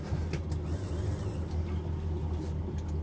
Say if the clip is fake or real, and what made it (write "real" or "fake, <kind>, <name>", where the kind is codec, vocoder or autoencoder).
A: real